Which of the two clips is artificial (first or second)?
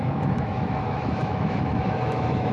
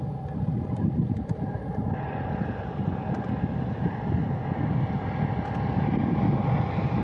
first